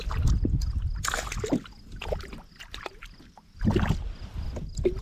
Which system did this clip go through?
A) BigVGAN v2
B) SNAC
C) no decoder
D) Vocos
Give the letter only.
C